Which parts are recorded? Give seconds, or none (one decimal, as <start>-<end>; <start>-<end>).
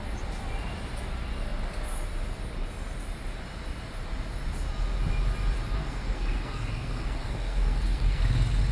0.0-5.8; 8.2-8.7